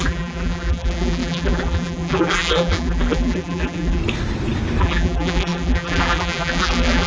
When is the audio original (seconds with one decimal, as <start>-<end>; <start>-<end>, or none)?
4.0-4.8